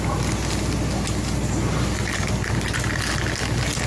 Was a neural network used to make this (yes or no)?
no